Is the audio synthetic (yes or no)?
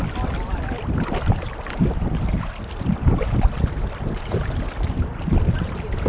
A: no